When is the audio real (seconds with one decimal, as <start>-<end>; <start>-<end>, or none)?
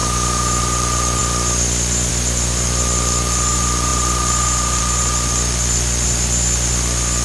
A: 0.6-7.2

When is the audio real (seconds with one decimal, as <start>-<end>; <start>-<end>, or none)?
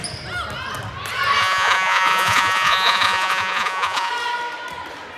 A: 0.0-1.4; 4.1-5.2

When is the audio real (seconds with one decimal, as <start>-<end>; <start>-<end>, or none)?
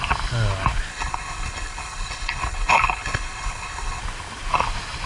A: 0.0-0.9; 4.0-5.1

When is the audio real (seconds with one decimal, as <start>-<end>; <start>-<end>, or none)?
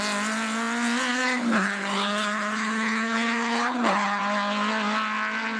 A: 0.0-1.1; 4.2-5.6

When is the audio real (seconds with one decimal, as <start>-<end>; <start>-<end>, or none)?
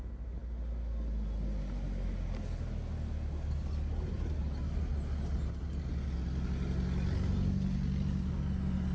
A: 0.0-8.9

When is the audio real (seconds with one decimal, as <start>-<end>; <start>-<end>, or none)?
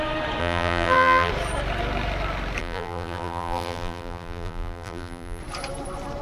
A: 0.0-0.4; 1.3-2.6; 5.4-6.2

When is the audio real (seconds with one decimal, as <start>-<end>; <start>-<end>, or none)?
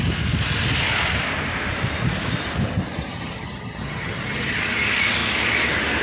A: 0.0-3.1; 4.6-6.0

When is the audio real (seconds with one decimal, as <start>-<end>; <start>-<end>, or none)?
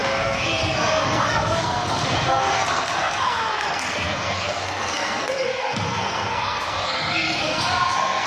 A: none